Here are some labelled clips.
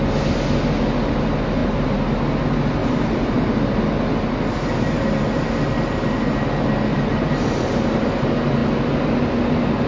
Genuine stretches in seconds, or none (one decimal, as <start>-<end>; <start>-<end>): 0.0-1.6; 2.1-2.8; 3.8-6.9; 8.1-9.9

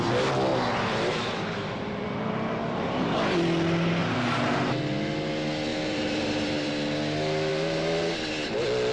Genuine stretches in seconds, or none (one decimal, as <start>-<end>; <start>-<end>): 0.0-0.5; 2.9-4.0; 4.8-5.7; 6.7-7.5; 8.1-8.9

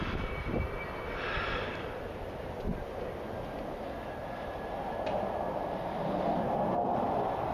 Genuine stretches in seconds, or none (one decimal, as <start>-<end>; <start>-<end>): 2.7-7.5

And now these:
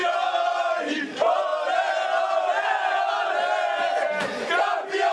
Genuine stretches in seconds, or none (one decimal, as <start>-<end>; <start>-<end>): 0.0-0.8; 1.5-4.6

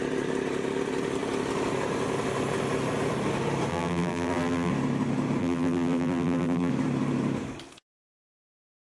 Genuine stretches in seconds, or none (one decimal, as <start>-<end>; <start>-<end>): 0.0-3.7; 4.7-5.4; 6.7-8.8